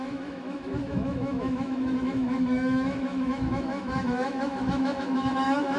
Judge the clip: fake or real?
fake